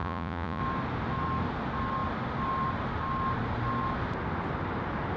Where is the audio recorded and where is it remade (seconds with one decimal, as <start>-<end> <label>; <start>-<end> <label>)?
0.0-0.6 remade; 0.6-5.2 recorded